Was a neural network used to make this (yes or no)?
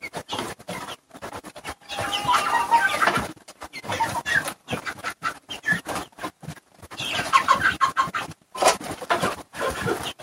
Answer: yes